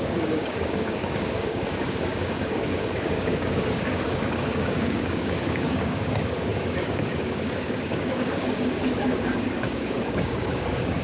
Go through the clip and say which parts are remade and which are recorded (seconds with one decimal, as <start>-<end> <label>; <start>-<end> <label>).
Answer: 0.0-11.0 remade